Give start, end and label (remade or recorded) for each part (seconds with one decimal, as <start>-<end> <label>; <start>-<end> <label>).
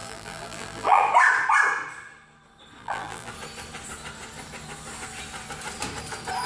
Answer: 0.0-1.0 remade; 1.0-2.8 recorded; 2.8-3.3 remade; 3.3-6.5 recorded